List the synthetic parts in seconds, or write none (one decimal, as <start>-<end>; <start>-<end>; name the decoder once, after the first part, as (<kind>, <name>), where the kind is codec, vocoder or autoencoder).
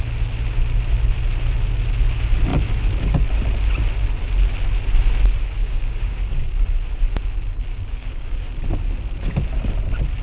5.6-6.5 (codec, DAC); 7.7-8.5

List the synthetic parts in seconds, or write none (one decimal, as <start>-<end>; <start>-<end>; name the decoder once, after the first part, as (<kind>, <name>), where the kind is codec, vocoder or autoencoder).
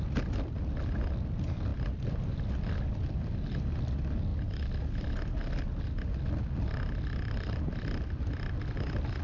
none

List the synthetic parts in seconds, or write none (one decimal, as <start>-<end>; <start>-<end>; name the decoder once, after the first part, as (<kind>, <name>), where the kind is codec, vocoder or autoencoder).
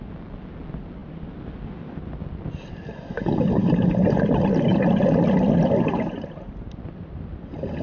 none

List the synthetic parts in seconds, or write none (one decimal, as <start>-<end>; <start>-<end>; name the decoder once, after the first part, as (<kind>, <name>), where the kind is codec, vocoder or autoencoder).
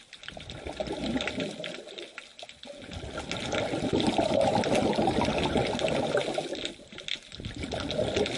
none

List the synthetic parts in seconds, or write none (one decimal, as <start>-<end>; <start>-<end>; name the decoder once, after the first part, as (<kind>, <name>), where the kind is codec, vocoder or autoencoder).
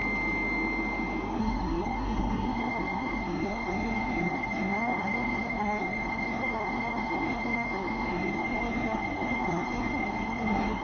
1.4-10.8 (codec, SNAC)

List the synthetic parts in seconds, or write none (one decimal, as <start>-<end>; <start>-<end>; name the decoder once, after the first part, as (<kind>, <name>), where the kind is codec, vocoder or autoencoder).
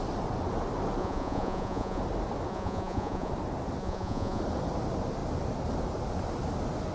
1.0-2.0 (vocoder, Vocos); 2.5-3.3; 3.8-4.4